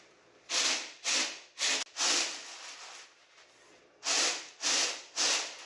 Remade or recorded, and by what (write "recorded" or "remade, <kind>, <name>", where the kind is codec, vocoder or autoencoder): recorded